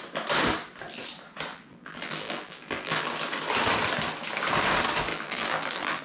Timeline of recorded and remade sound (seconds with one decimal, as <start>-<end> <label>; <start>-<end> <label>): 0.0-1.5 recorded; 1.5-3.1 remade; 3.1-5.1 recorded; 5.1-6.0 remade